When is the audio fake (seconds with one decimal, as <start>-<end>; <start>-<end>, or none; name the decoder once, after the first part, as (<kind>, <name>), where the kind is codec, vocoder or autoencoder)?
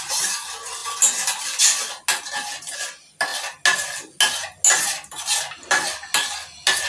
none